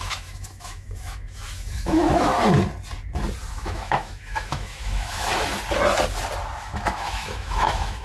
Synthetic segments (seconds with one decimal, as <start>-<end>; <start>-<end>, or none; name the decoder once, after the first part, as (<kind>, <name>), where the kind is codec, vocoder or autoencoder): 0.0-2.3 (autoencoder, DAC-VAE); 3.5-5.3; 6.6-8.0